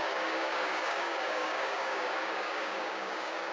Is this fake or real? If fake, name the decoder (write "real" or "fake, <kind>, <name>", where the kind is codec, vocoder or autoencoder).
fake, codec, DAC